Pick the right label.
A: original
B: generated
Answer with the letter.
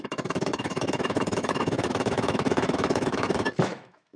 B